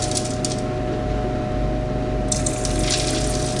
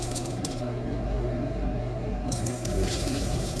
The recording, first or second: first